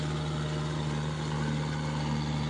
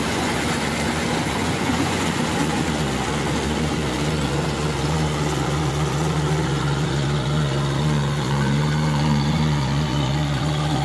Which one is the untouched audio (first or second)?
first